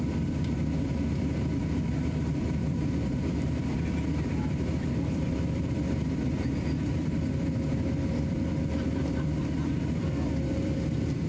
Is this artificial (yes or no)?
yes